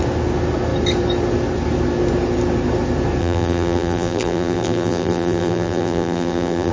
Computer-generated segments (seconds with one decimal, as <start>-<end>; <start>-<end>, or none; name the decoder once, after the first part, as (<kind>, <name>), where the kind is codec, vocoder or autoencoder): 3.2-6.7 (vocoder, BigVGAN v2)